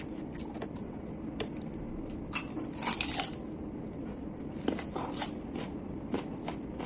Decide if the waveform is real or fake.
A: real